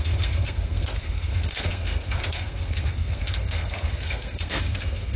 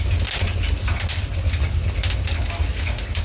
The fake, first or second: first